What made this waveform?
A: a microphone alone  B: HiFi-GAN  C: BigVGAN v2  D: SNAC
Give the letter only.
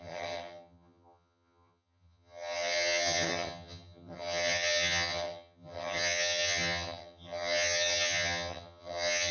B